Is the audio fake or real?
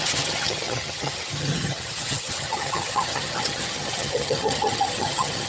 fake